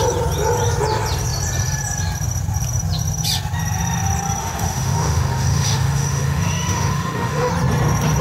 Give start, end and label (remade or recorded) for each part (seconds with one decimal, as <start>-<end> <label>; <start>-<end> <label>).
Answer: 0.0-4.4 recorded; 4.4-7.5 remade; 7.5-8.2 recorded